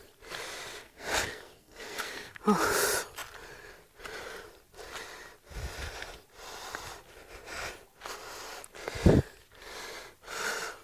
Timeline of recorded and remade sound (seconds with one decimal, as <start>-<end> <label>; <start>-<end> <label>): 0.0-0.8 recorded; 0.8-2.4 remade; 2.4-10.8 recorded